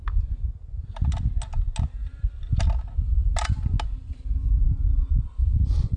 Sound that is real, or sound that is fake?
real